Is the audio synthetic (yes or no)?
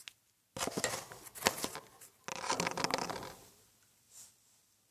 no